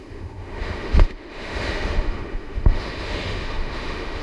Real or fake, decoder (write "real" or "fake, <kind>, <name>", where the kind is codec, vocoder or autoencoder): fake, autoencoder, DAC-VAE